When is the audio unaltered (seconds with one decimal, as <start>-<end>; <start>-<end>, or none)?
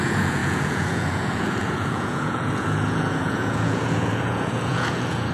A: none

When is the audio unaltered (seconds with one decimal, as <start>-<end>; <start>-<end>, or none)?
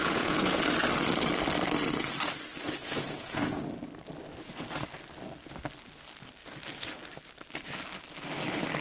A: 0.6-2.8; 3.7-8.8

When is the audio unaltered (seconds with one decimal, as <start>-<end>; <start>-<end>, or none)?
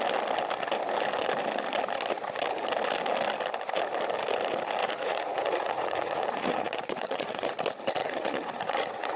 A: 0.0-4.8; 7.6-8.0